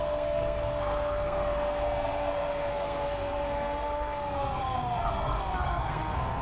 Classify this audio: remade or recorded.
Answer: remade